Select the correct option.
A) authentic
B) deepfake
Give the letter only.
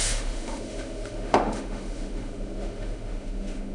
B